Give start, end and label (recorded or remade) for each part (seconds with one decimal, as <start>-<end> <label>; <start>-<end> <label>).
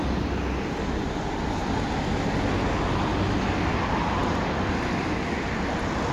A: 0.0-6.1 recorded